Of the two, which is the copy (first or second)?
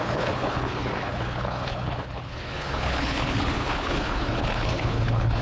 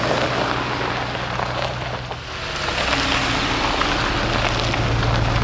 first